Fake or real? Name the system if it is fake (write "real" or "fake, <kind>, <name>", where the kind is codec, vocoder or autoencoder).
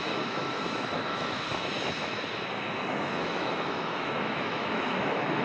fake, autoencoder, DAC-VAE